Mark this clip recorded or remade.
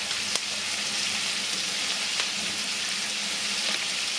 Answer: recorded